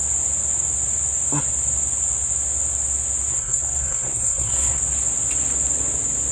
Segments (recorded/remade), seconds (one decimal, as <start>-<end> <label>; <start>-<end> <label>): 0.0-3.3 recorded; 3.3-4.8 remade; 4.8-6.3 recorded